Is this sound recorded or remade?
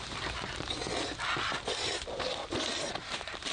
recorded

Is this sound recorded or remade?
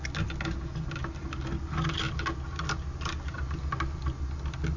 recorded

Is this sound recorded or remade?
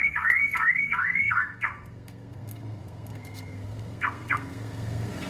remade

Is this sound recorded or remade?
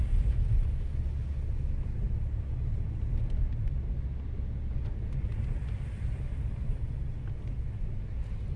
recorded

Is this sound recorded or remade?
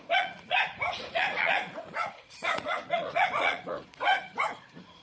remade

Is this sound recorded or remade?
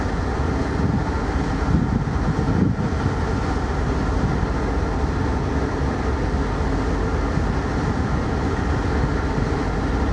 recorded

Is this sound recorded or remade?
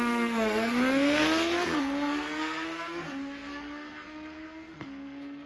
remade